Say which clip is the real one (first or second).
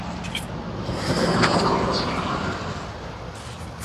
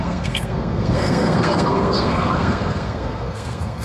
first